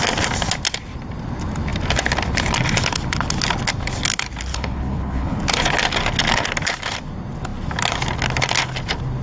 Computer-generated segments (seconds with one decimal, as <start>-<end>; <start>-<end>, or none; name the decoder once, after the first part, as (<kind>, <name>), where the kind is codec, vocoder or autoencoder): 4.5-5.4 (codec, HILCodec)